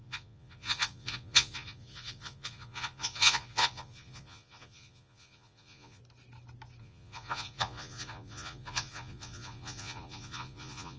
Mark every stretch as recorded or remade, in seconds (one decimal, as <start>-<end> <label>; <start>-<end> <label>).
0.0-6.0 remade; 6.0-6.8 recorded; 6.8-11.0 remade